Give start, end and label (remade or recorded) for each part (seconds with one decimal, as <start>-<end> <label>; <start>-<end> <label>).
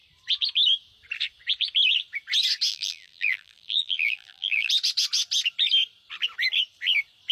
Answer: 0.0-2.7 recorded; 2.7-4.7 remade; 4.7-7.3 recorded